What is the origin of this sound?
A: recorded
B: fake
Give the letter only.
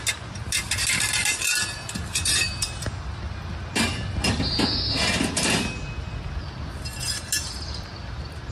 A